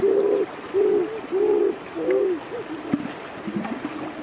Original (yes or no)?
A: yes